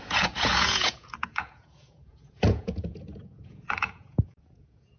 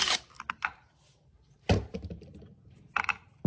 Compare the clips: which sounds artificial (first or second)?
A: first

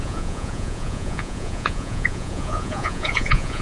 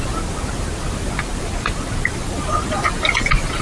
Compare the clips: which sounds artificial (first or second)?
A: first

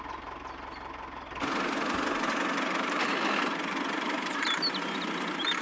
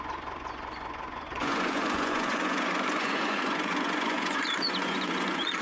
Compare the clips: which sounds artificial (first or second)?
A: second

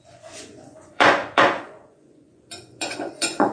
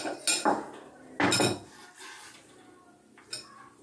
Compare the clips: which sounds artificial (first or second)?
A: first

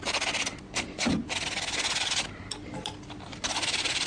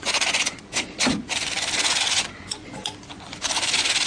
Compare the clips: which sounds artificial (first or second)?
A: second